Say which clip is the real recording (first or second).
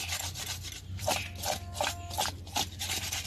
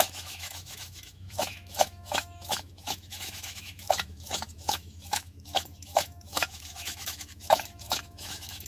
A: first